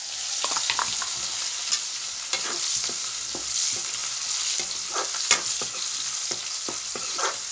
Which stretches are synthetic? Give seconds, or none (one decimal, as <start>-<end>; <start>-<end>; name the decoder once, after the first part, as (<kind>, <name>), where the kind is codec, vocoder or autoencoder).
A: none